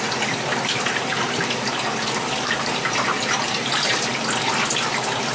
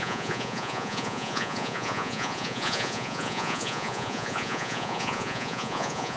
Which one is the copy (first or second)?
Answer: second